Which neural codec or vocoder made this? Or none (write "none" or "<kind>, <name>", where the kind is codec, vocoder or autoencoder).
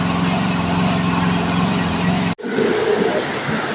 none